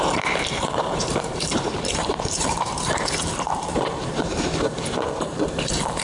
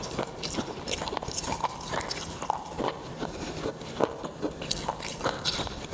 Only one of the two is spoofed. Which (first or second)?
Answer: first